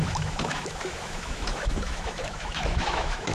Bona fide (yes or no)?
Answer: no